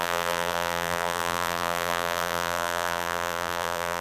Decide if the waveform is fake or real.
fake